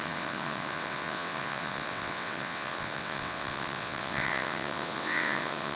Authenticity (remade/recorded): remade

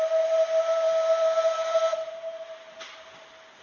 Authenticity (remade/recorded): recorded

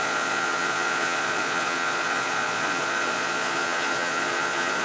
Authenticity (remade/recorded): remade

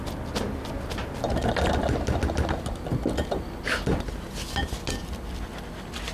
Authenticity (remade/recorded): recorded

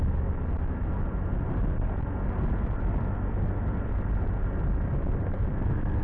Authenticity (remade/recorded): recorded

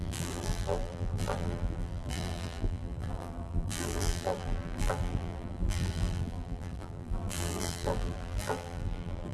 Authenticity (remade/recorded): remade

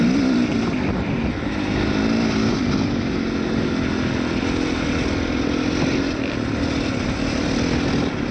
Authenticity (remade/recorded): recorded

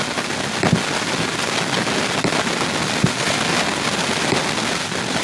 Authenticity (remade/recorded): recorded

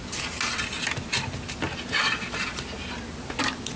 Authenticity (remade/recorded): recorded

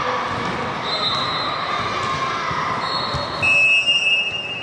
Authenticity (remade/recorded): recorded